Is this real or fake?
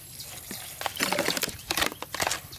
real